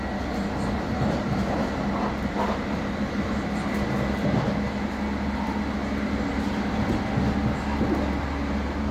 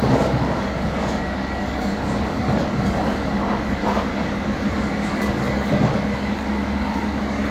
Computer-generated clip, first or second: second